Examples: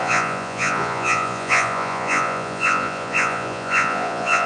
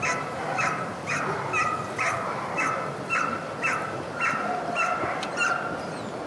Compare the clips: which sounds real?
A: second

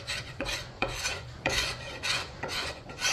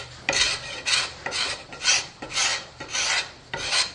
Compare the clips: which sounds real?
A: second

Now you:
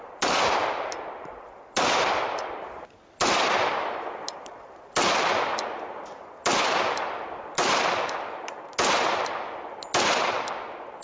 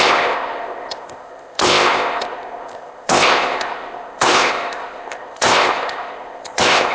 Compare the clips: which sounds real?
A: first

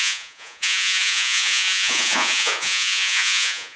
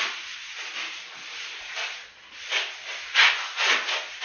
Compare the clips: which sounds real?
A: second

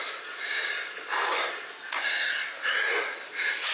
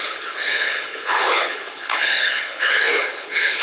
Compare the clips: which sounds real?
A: first